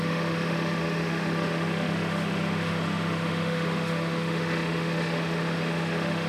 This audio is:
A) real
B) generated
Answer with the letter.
B